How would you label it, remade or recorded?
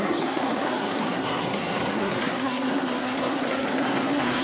remade